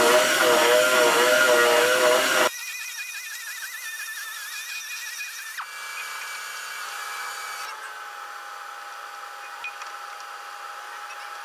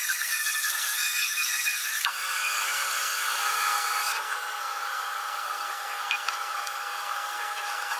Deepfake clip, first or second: second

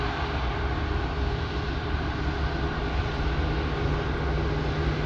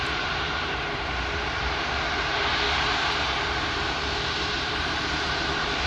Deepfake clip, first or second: second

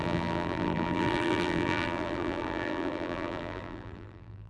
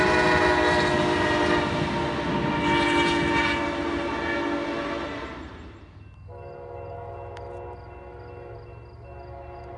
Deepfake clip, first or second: first